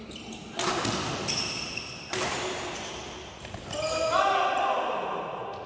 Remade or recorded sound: recorded